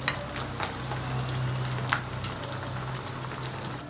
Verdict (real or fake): real